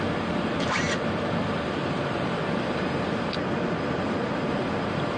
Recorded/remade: remade